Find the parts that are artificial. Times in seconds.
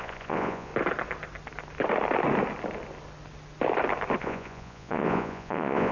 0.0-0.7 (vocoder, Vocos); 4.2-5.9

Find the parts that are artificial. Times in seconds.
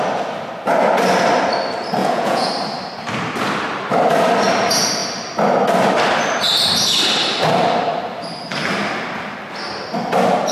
2.0-2.5 (vocoder, Vocos)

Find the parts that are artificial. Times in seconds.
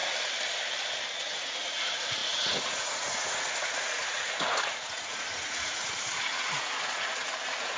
1.1-7.8 (vocoder, Vocos)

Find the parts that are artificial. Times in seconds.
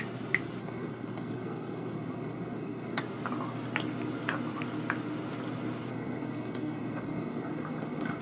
0.6-3.0 (codec, SNAC); 5.9-8.2